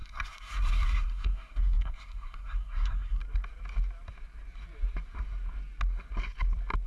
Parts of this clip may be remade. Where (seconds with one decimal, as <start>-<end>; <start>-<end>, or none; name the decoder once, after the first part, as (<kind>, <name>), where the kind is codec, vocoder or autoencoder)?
0.0-3.2 (codec, SNAC)